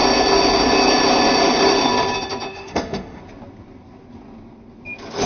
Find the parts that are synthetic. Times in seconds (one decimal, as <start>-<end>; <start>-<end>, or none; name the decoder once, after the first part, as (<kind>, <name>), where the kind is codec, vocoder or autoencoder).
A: 2.5-3.2 (autoencoder, DAC-VAE)